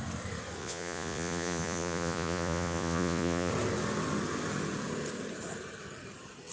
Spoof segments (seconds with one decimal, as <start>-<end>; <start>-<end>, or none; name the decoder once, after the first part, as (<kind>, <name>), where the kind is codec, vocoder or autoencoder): 0.6-3.5 (vocoder, Vocos)